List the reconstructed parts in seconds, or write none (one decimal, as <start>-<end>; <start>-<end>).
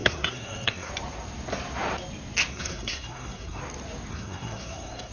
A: 0.0-0.9; 2.5-3.6; 4.1-5.1